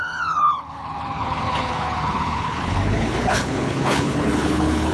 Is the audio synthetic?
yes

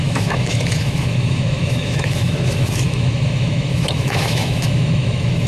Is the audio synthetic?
yes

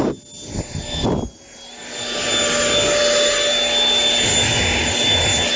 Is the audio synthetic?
no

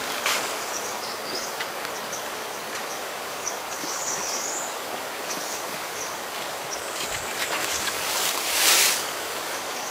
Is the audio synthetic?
yes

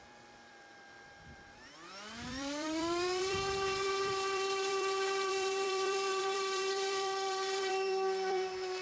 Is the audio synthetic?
yes